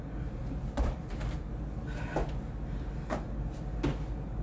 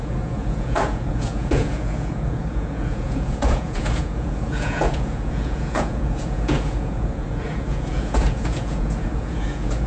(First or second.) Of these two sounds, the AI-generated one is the second